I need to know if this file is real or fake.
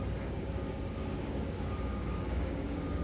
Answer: fake